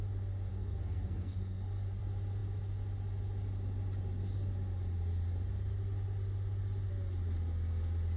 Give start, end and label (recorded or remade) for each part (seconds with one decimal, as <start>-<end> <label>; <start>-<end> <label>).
0.0-0.5 recorded; 0.5-2.0 remade; 2.0-8.2 recorded